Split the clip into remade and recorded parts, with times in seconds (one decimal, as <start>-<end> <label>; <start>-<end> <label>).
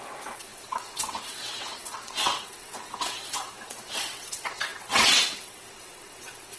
0.0-6.6 remade